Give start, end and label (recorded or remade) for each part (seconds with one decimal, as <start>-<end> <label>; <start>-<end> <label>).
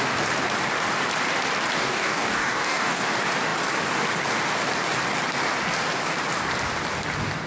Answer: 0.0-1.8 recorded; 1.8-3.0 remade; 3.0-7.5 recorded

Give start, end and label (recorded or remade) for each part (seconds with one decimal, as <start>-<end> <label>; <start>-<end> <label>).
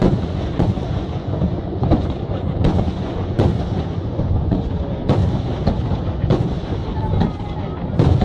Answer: 0.0-5.2 remade; 5.2-6.1 recorded; 6.1-6.8 remade; 6.8-8.2 recorded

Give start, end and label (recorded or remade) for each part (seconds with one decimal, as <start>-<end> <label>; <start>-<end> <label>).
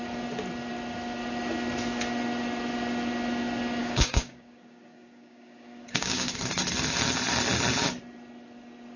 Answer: 0.0-3.8 recorded; 3.8-6.4 remade; 6.4-9.0 recorded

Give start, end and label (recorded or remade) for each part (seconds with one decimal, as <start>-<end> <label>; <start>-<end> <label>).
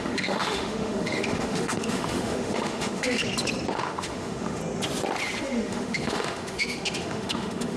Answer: 0.0-3.2 remade; 3.2-3.7 recorded; 3.7-4.6 remade; 4.6-5.4 recorded; 5.4-7.8 remade